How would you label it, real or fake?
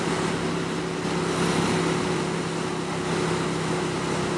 real